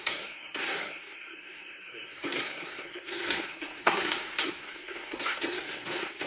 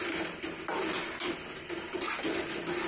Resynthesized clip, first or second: first